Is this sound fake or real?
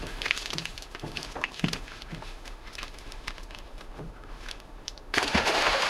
fake